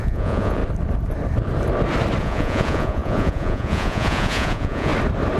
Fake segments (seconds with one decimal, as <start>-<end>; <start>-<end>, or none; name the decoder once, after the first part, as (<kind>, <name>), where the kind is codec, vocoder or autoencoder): 0.0-0.6 (vocoder, Vocos); 2.2-4.9